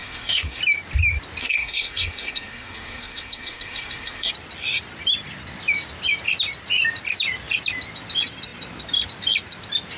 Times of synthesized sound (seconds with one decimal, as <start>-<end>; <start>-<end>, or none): 0.0-0.6; 1.4-4.3